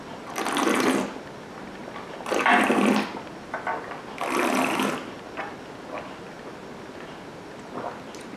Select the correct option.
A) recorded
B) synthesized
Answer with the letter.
A